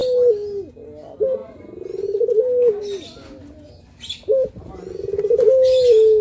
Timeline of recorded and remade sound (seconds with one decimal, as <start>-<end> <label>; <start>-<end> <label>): 0.0-6.2 recorded